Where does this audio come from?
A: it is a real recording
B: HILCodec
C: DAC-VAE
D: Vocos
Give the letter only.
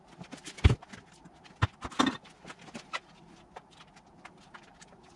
A